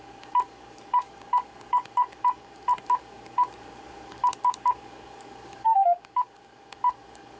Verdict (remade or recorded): remade